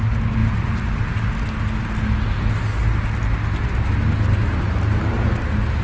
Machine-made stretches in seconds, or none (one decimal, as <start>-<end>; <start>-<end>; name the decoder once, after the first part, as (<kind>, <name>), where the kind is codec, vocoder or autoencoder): none